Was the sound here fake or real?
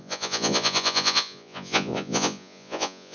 fake